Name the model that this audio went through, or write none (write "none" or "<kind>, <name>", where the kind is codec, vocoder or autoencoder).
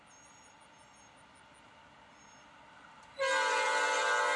none